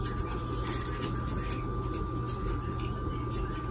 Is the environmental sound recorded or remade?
recorded